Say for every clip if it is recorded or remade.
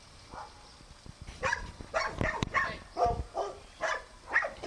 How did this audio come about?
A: recorded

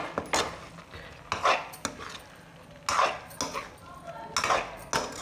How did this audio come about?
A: recorded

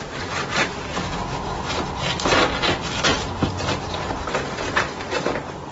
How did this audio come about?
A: recorded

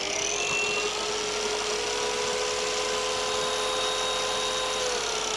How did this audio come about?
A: recorded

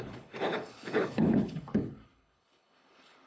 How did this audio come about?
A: remade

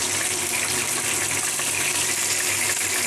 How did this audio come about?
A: recorded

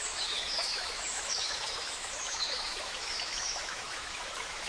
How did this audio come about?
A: remade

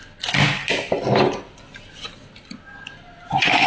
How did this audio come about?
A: recorded